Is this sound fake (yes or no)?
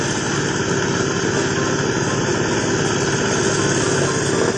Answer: no